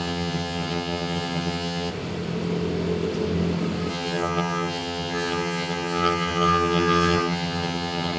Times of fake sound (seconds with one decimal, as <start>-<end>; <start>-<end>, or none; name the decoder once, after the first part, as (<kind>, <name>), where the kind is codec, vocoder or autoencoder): 0.0-1.9 (vocoder, HiFi-GAN); 3.9-8.2